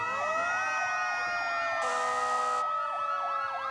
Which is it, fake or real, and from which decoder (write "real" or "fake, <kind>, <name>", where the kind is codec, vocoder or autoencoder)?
real